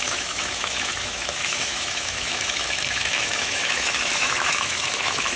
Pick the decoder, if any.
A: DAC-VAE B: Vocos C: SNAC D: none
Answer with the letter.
A